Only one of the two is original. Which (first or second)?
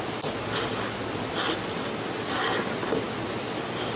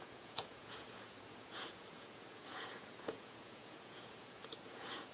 first